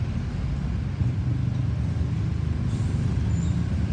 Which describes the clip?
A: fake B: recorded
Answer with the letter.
B